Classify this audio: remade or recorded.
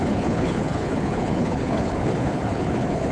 remade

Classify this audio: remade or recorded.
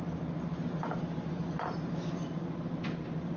recorded